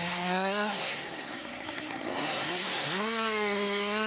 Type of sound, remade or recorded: remade